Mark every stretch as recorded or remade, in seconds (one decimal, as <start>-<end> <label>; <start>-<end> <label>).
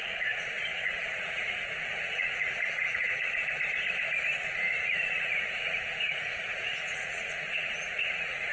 0.0-3.4 remade; 3.4-4.4 recorded; 4.4-8.5 remade